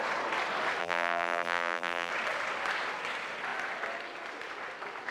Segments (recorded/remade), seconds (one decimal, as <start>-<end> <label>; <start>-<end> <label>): 0.0-0.8 recorded; 0.8-2.1 remade; 2.1-5.1 recorded